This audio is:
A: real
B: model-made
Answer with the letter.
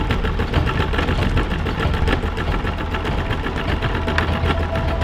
A